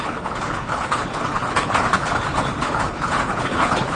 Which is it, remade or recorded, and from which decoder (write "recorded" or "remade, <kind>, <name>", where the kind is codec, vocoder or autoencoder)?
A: remade, codec, HILCodec